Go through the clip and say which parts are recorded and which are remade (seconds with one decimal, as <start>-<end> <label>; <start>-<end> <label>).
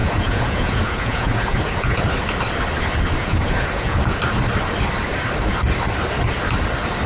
0.0-2.0 remade; 2.0-3.2 recorded; 3.2-4.2 remade; 4.2-7.1 recorded